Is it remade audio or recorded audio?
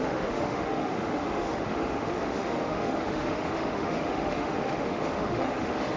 remade